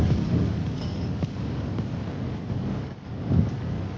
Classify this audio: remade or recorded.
remade